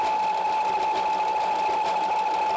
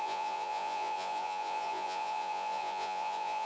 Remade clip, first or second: second